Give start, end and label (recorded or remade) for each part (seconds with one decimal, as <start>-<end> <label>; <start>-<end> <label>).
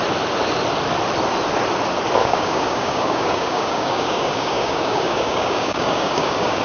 0.0-2.2 recorded; 2.2-6.6 remade